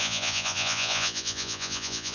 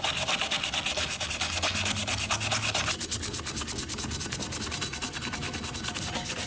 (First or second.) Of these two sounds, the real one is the second